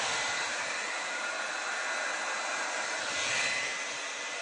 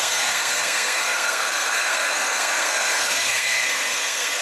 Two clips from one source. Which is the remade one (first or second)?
second